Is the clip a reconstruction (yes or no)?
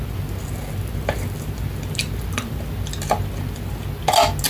no